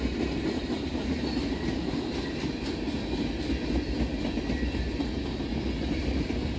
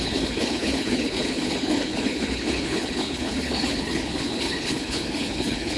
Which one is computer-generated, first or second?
second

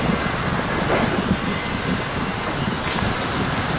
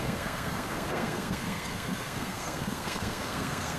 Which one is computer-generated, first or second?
second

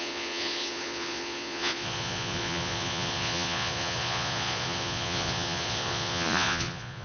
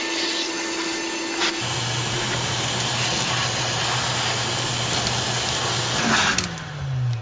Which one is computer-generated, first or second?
first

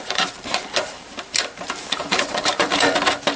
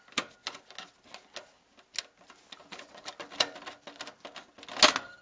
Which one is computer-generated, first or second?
first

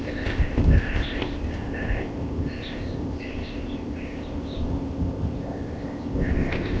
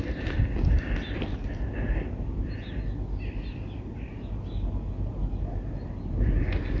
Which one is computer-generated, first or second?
first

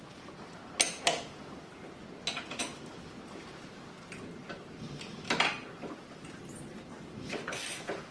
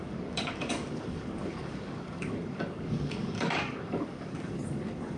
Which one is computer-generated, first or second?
second